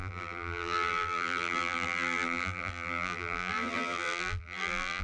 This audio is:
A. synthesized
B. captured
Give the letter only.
A